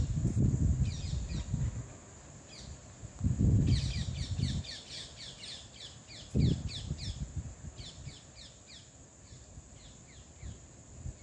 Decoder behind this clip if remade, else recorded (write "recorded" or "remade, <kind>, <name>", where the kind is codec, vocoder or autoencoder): recorded